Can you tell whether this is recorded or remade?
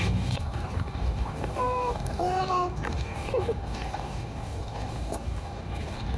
remade